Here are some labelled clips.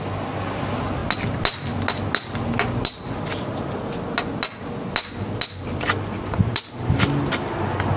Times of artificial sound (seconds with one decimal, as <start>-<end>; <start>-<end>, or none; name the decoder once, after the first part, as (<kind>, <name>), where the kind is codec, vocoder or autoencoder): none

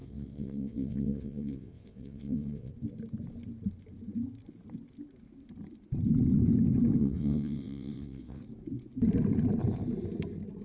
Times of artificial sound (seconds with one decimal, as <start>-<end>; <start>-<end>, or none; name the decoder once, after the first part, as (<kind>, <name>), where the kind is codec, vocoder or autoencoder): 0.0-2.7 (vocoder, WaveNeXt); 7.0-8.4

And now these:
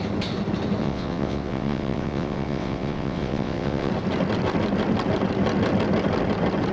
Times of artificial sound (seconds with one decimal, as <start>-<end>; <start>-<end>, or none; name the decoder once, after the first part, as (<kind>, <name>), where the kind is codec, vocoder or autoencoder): 0.8-3.9 (vocoder, WaveNeXt)

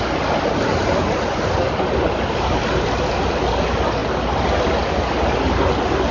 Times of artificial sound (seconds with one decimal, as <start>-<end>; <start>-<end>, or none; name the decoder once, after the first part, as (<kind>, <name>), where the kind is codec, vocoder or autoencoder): none